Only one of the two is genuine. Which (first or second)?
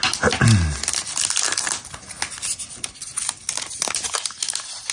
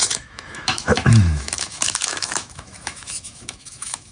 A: first